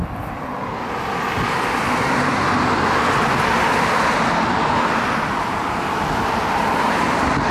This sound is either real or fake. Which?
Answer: real